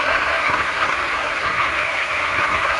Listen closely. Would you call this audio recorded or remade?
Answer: remade